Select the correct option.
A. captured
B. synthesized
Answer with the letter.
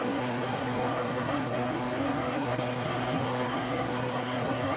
B